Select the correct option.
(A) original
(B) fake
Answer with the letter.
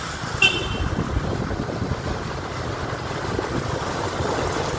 A